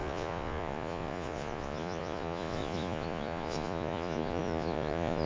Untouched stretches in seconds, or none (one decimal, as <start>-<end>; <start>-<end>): none